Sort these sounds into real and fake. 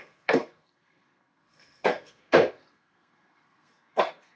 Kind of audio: fake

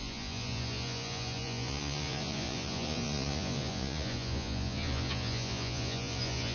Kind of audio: fake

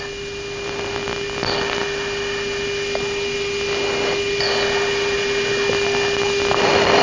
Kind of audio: real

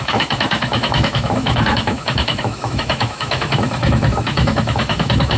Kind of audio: fake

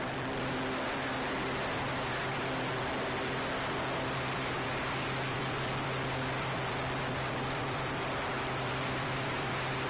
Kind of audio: fake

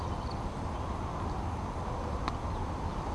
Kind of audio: real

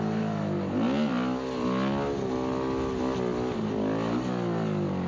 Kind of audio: real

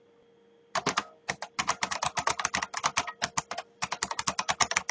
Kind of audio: real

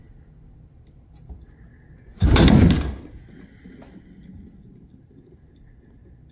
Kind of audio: real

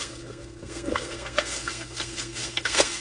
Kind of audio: fake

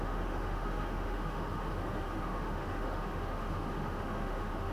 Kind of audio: fake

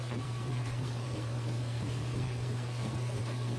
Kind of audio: fake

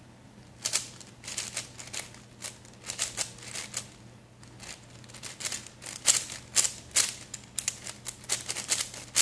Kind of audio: real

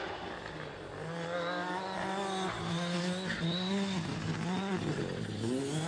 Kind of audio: real